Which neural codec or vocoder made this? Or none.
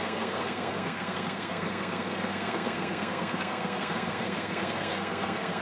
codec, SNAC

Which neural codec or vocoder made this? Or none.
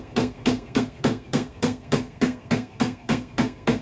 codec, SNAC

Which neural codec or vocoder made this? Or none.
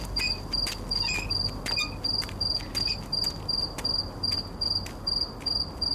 none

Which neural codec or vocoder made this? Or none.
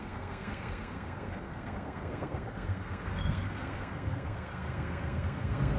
codec, SNAC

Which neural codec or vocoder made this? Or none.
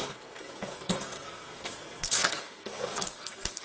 codec, SNAC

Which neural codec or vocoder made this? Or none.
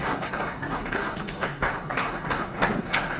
codec, SNAC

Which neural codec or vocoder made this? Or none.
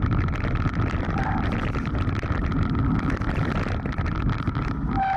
none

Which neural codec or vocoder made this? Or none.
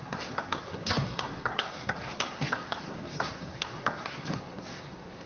codec, SNAC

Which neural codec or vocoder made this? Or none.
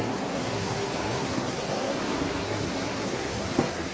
codec, SNAC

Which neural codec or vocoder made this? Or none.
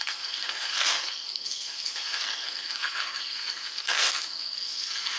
codec, SNAC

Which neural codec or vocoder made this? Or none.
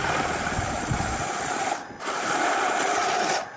none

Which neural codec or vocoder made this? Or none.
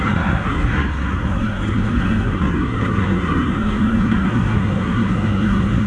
codec, SNAC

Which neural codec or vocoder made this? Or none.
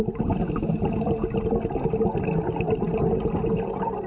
none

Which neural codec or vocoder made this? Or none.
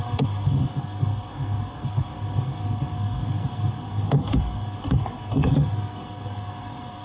codec, SNAC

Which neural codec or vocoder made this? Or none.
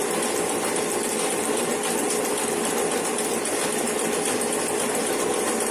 none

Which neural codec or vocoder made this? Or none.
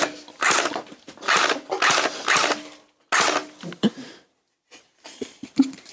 none